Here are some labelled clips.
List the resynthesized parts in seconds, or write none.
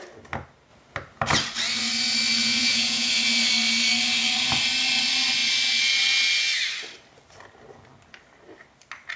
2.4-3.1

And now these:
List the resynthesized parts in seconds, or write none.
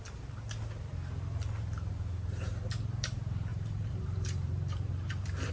3.5-5.5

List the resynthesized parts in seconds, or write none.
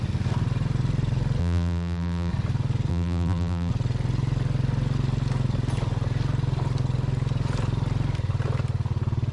1.4-2.3; 2.9-3.7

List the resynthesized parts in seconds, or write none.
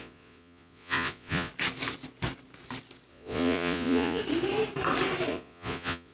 0.0-1.5; 3.1-4.2; 5.3-6.1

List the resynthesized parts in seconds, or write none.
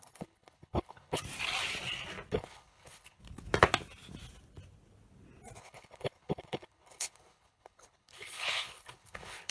0.0-1.2; 2.3-3.2; 5.6-9.5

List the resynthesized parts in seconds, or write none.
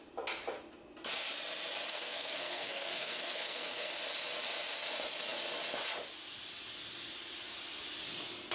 1.9-3.9